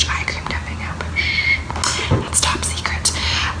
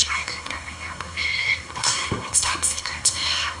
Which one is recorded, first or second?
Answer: first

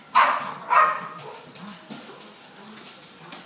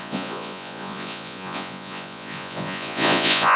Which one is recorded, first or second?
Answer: first